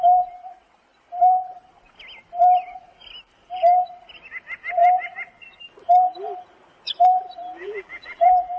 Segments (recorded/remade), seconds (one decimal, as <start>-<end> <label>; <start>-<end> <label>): 0.0-7.6 recorded; 7.6-8.6 remade